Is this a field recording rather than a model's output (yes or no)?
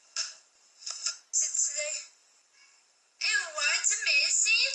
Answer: yes